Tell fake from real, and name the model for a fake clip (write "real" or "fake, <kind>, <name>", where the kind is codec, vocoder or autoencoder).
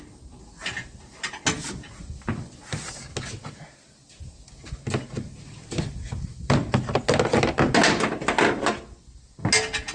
real